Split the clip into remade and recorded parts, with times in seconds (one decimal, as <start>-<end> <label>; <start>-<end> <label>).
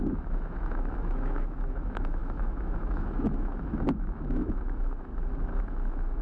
0.0-5.1 remade; 5.1-5.6 recorded; 5.6-6.2 remade